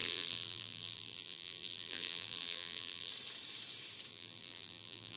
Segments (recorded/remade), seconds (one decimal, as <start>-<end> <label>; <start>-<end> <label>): 0.0-3.1 remade; 3.1-4.1 recorded; 4.1-5.2 remade